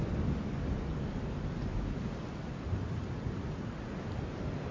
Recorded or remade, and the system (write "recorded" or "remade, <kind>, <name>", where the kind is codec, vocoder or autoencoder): recorded